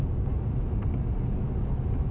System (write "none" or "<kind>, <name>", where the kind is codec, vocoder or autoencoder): none